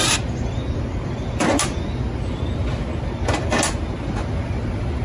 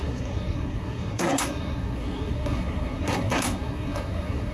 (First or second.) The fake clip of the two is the second